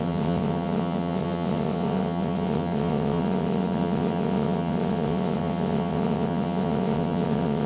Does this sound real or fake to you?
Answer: fake